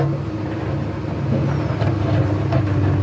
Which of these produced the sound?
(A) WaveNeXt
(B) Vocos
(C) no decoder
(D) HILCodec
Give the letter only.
C